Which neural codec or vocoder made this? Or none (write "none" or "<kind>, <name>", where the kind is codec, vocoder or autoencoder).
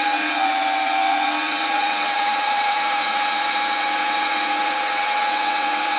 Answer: vocoder, WaveNeXt